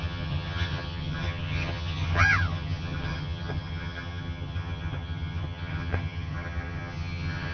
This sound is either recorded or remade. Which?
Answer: remade